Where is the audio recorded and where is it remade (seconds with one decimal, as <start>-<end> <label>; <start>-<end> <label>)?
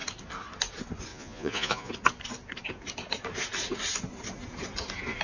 0.0-1.1 recorded; 1.1-1.9 remade; 1.9-5.2 recorded